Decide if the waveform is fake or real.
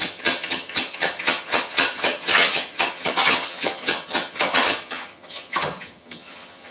fake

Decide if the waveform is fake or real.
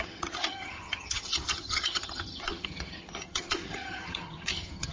fake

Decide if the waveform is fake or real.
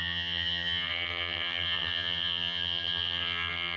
fake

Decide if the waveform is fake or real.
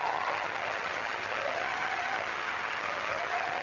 fake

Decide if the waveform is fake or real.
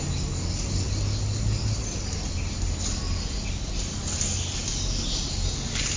real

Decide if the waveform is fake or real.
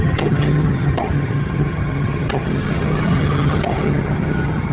fake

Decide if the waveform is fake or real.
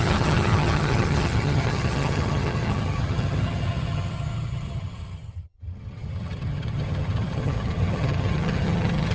fake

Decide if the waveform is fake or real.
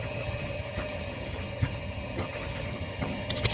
fake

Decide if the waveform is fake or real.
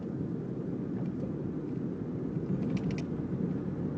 real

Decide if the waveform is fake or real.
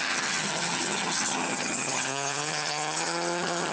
fake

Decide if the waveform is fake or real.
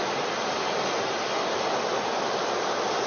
real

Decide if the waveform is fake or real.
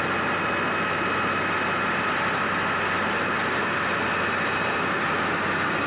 real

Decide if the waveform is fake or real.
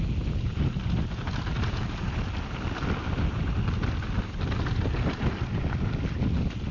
real